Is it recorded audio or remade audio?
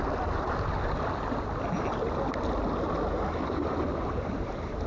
recorded